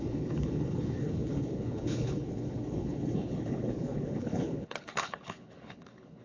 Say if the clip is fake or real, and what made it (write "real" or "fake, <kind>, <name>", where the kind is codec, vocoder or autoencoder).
fake, codec, HILCodec